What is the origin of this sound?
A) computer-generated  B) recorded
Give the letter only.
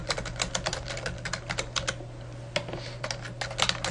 B